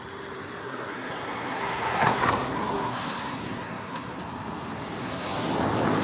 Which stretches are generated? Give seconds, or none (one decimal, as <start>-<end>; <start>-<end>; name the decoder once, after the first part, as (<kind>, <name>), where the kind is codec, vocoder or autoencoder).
0.6-4.2 (codec, SNAC); 5.0-5.5